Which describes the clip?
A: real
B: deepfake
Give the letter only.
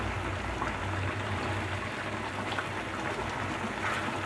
A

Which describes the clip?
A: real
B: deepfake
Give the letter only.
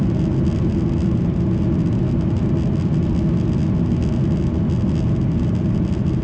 A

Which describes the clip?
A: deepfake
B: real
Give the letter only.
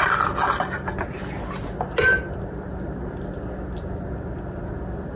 B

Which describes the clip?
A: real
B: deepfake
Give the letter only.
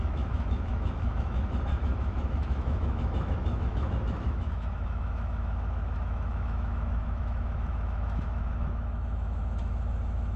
B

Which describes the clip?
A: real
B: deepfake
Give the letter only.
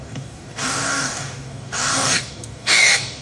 B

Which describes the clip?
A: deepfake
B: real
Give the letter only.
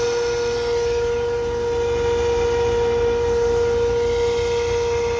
B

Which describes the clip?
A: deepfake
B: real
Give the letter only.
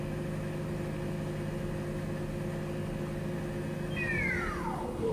B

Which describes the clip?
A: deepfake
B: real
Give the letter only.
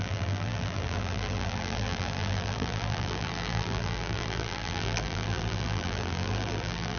A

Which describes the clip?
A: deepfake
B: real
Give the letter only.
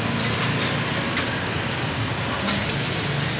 B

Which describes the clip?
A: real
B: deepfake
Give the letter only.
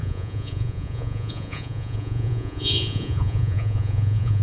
B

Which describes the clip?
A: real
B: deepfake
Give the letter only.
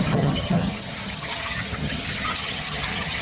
B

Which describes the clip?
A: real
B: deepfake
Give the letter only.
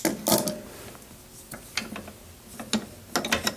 A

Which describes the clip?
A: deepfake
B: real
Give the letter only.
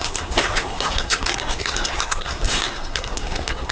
A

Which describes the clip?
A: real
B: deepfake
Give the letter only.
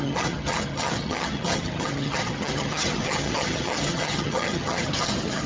B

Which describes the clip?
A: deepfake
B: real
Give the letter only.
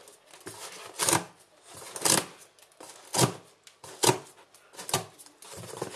B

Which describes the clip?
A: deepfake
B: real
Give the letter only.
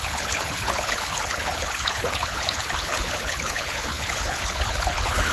A